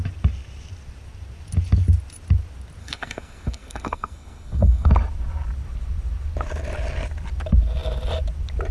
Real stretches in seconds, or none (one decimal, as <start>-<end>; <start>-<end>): 0.0-2.8; 4.9-8.7